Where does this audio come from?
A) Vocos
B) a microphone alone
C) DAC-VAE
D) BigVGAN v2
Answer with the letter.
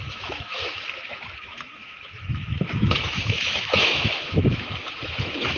C